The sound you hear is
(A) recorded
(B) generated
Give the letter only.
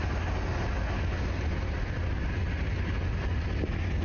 A